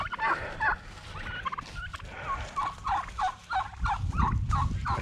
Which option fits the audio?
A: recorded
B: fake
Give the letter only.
A